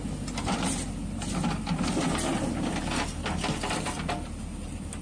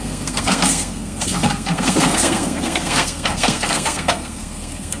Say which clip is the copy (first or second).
second